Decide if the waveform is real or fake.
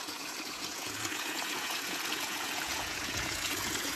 fake